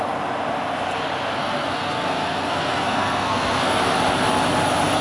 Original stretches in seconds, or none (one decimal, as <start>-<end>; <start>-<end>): 0.0-1.4; 3.8-5.0